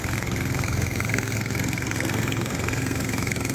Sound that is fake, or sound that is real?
fake